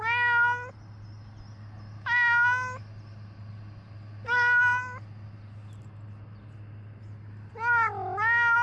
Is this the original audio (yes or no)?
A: yes